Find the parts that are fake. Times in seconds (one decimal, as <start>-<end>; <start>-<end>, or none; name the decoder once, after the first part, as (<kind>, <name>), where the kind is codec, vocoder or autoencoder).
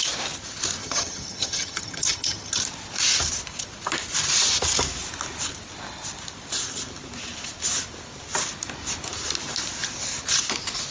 0.8-2.6 (vocoder, HiFi-GAN)